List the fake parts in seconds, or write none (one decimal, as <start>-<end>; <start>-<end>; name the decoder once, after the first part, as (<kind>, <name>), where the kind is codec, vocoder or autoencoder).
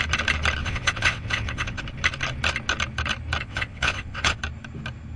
0.6-1.8 (vocoder, WaveNeXt); 3.4-4.4